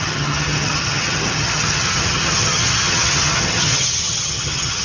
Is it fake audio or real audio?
fake